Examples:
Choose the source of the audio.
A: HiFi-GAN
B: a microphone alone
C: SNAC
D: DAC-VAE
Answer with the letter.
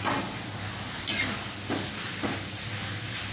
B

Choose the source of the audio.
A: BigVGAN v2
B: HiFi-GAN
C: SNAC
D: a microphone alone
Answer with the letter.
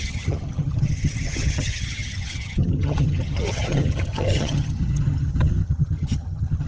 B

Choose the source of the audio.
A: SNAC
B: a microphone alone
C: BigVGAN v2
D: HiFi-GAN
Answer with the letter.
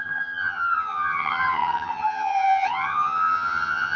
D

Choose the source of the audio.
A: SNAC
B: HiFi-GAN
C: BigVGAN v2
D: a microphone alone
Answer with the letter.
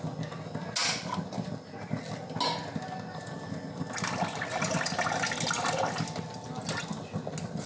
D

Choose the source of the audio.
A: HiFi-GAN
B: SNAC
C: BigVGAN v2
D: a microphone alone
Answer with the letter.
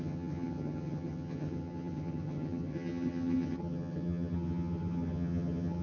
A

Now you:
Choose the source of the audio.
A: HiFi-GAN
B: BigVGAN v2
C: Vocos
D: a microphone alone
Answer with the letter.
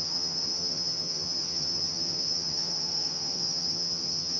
A